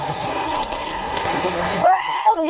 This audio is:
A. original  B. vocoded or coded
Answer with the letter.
B